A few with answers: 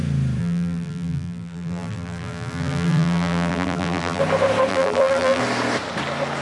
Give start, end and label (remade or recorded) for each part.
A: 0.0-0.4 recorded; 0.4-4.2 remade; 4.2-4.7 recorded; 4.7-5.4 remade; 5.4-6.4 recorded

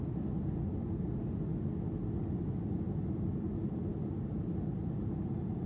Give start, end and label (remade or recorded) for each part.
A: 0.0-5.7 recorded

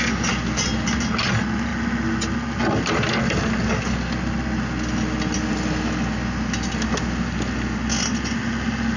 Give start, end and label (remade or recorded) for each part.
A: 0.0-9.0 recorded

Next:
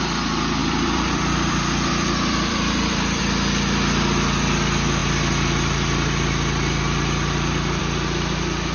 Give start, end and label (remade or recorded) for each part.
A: 0.0-0.6 recorded; 0.6-3.2 remade; 3.2-8.7 recorded

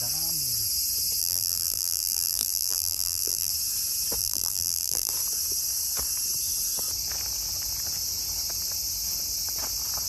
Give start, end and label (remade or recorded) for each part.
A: 0.0-1.2 recorded; 1.2-3.5 remade; 3.5-4.2 recorded; 4.2-5.1 remade; 5.1-10.1 recorded

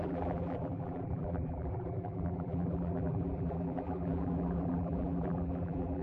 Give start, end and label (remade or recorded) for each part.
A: 0.0-6.0 remade

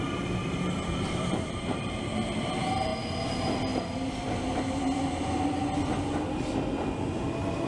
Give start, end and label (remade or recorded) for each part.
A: 0.0-2.9 remade; 2.9-7.7 recorded

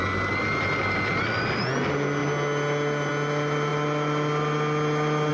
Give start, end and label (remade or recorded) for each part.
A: 0.0-5.3 recorded